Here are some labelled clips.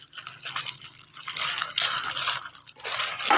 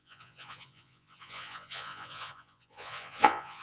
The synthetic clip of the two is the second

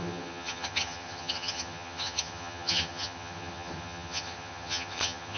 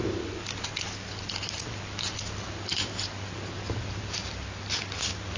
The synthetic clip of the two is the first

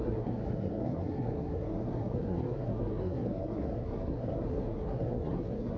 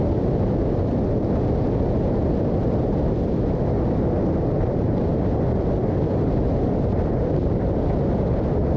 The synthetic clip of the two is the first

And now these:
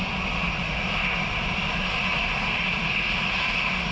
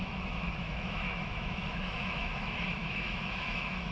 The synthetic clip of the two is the second